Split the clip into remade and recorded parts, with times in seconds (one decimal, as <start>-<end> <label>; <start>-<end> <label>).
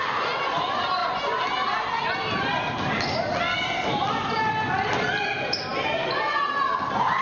0.0-7.2 recorded